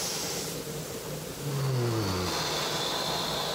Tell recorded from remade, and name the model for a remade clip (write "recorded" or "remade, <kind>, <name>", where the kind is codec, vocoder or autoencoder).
recorded